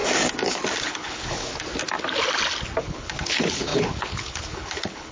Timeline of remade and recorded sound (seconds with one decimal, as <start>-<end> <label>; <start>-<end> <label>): 0.0-0.8 recorded; 0.8-1.5 remade; 1.5-2.8 recorded; 2.8-5.1 remade